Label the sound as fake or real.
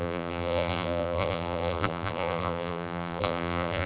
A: fake